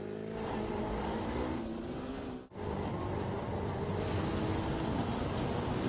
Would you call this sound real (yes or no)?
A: yes